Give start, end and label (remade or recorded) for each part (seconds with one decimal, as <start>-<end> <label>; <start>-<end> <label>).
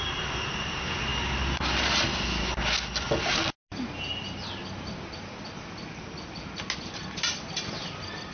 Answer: 0.0-8.3 recorded